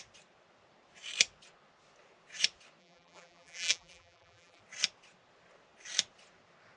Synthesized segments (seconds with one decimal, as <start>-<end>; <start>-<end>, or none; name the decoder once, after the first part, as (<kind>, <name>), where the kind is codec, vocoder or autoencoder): 2.8-4.6 (vocoder, BigVGAN v2)